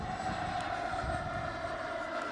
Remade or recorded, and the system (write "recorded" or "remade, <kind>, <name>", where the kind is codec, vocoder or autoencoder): recorded